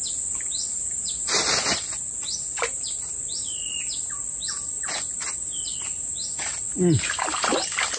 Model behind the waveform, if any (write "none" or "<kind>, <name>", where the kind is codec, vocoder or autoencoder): none